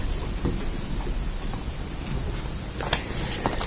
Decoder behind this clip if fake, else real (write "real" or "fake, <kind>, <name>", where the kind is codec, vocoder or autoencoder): fake, vocoder, BigVGAN v2